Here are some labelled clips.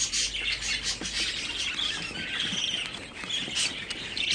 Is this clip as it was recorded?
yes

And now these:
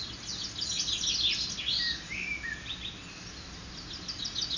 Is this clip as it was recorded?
yes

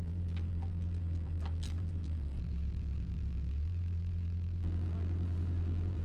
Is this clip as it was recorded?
no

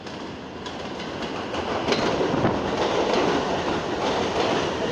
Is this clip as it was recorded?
yes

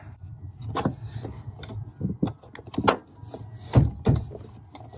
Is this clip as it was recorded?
yes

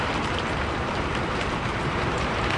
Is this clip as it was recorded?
no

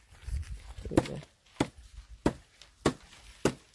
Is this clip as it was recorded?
yes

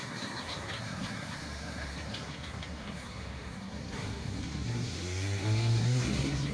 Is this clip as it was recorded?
no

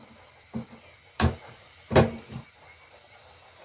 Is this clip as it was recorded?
yes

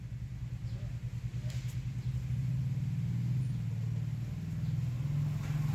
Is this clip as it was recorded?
yes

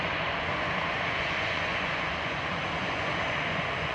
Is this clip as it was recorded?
no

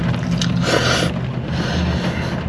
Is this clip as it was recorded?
yes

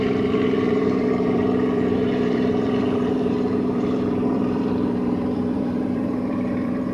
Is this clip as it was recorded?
no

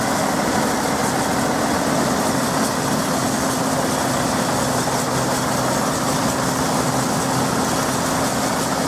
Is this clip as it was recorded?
yes